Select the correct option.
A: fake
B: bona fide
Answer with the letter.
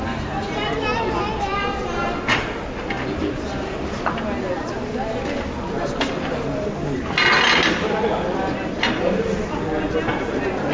B